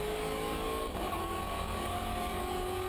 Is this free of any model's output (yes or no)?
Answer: no